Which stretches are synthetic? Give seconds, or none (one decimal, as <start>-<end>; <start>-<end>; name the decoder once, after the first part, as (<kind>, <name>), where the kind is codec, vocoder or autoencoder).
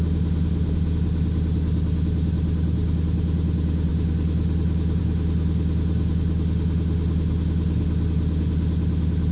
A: none